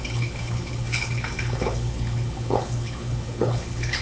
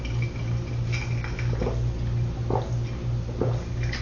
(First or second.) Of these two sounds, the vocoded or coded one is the first